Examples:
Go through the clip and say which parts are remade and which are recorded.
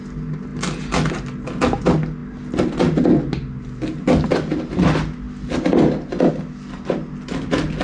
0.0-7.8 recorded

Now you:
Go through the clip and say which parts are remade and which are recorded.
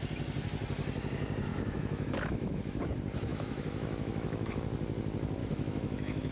0.0-1.5 recorded; 1.5-2.9 remade; 2.9-3.3 recorded; 3.3-4.5 remade; 4.5-5.4 recorded; 5.4-6.3 remade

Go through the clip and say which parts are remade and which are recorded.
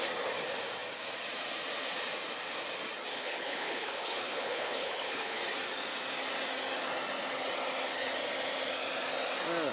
0.0-3.1 recorded; 3.1-5.4 remade; 5.4-9.7 recorded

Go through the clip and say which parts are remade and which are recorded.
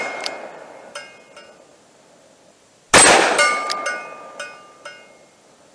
0.0-5.7 recorded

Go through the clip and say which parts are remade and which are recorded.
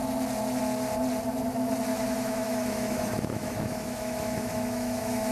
0.0-1.9 recorded; 1.9-5.3 remade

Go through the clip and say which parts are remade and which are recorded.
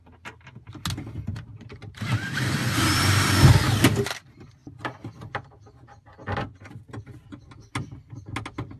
0.0-1.3 recorded; 1.3-2.4 remade; 2.4-8.8 recorded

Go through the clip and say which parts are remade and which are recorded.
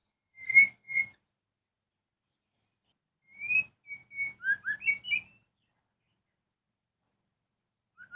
0.0-1.0 remade; 1.0-8.2 recorded